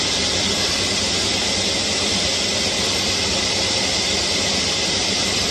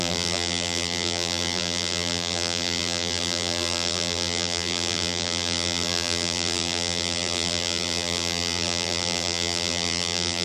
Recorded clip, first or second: first